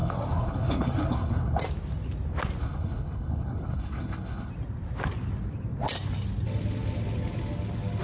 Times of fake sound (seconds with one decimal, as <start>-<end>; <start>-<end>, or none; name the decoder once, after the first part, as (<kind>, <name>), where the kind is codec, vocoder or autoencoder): 0.0-1.6 (codec, HILCodec); 2.6-4.5